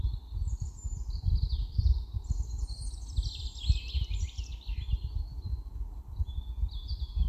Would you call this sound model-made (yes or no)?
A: no